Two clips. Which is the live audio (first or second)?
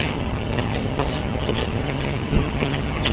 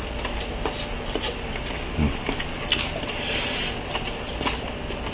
second